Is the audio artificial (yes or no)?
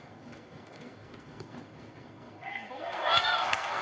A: yes